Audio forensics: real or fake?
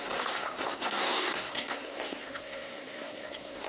fake